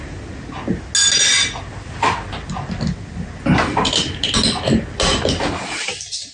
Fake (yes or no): no